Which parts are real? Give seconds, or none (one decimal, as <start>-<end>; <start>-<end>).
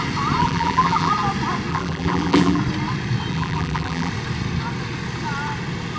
0.0-0.4; 1.1-1.7; 2.6-3.3; 4.1-6.0